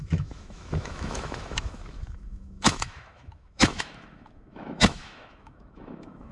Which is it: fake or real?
fake